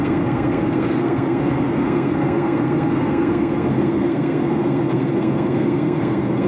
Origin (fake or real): fake